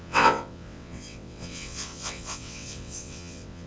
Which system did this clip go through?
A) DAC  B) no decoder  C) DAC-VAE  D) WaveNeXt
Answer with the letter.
D